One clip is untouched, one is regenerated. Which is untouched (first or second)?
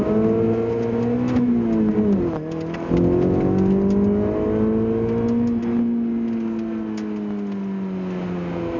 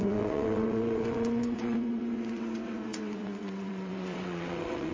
first